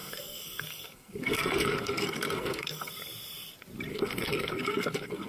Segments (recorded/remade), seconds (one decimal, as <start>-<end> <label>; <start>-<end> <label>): 0.0-2.9 remade; 2.9-3.9 recorded; 3.9-5.3 remade